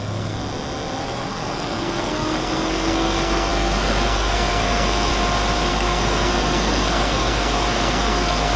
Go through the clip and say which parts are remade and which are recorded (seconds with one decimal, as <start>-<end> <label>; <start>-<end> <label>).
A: 0.0-0.4 remade; 0.4-1.0 recorded; 1.0-5.1 remade; 5.1-5.7 recorded; 5.7-8.6 remade